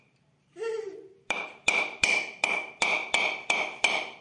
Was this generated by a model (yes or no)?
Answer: yes